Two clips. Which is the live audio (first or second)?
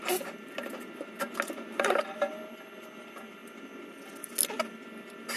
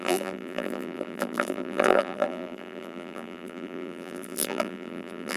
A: first